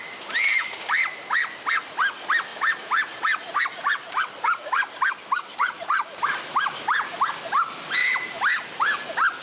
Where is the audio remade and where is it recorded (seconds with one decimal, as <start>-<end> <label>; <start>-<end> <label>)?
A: 0.0-9.4 recorded